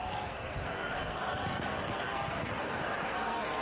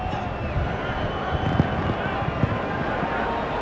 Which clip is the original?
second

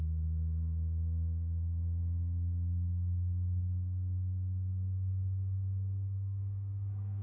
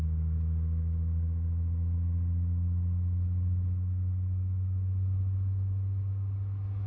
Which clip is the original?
second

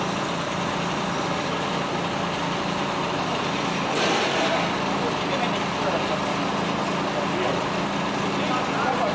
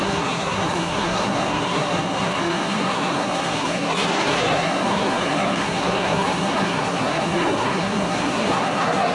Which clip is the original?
first